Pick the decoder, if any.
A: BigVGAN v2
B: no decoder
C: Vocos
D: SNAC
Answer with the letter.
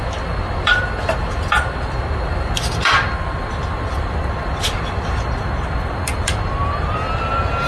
A